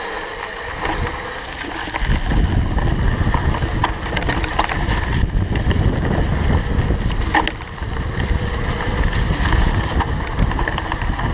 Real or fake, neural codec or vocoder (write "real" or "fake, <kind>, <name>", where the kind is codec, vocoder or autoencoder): real